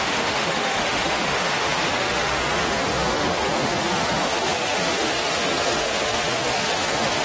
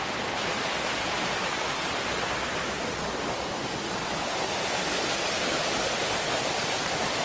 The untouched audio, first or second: second